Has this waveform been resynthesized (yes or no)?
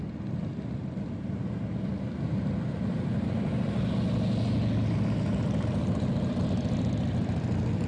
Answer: no